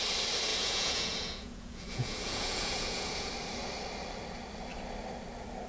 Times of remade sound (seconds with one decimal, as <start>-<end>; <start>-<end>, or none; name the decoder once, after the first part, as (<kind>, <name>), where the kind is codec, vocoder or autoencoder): 0.5-3.3 (vocoder, Vocos)